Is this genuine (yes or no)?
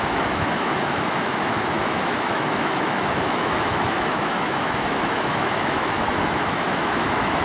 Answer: no